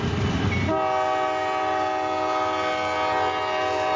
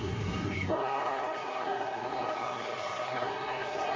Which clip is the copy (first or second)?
second